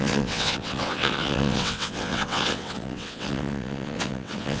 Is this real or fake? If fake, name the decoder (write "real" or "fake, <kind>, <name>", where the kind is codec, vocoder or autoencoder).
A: fake, vocoder, WaveNeXt